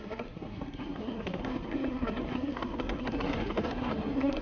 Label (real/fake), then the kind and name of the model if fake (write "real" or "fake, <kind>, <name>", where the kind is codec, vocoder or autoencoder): fake, codec, SNAC